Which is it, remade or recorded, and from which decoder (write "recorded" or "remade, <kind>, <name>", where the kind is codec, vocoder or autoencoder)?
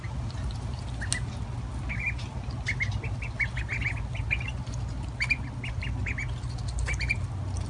recorded